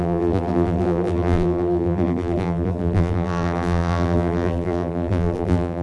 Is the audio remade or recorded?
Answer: remade